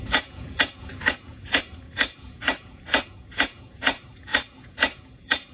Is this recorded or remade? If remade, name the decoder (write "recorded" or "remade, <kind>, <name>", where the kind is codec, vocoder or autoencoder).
remade, vocoder, Vocos